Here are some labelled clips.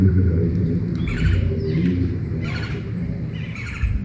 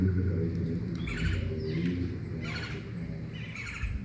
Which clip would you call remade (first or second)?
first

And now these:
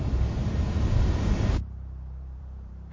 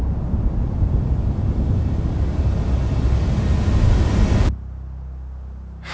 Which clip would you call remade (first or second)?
first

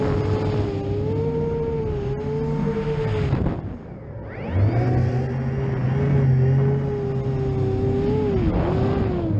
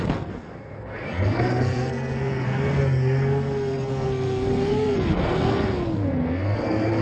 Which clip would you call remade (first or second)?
second